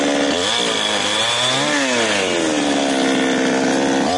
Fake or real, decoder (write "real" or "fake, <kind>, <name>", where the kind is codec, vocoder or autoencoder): real